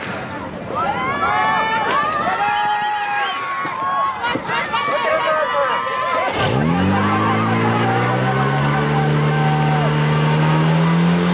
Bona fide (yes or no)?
yes